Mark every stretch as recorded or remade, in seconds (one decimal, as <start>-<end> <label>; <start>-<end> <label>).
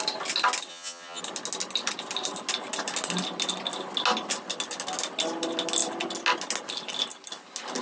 0.0-0.7 recorded; 0.7-1.2 remade; 1.2-7.8 recorded